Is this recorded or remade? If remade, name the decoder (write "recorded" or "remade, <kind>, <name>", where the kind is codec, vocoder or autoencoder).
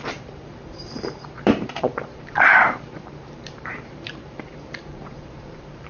remade, vocoder, BigVGAN v2